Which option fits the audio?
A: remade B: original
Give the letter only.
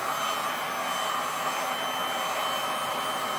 B